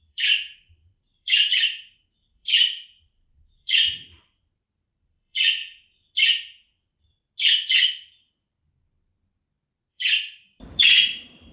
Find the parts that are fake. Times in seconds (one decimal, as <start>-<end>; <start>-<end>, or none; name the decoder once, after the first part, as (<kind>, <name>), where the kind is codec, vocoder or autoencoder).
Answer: 0.0-5.6 (vocoder, BigVGAN v2); 9.9-11.5